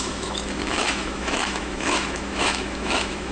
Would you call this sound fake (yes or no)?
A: yes